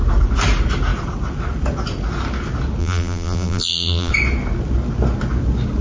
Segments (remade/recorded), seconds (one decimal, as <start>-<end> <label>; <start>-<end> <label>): 0.0-2.8 recorded; 2.8-4.1 remade; 4.1-5.8 recorded